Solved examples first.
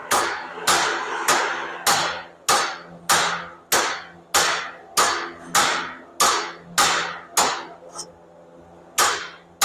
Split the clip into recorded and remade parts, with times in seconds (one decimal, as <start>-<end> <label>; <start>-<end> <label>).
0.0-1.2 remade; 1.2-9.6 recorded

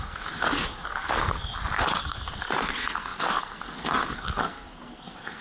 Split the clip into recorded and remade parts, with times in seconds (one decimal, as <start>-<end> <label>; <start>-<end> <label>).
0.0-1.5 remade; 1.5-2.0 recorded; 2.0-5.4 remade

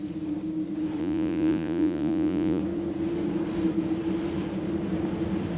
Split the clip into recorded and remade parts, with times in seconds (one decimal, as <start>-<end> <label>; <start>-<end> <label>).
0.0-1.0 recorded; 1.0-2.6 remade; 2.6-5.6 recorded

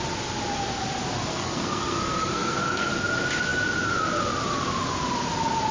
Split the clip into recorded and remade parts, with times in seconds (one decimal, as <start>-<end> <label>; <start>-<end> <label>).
0.0-1.3 recorded; 1.3-2.9 remade; 2.9-5.7 recorded

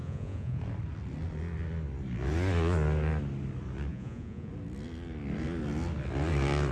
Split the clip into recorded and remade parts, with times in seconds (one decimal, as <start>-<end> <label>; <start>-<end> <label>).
0.0-0.6 remade; 0.6-3.9 recorded; 3.9-4.5 remade; 4.5-6.7 recorded